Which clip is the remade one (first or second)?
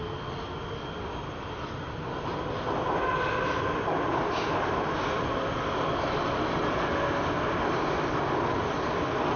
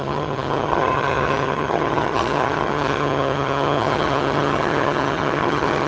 second